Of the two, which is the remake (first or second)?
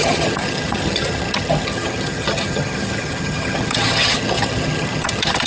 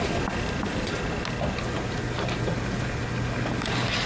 first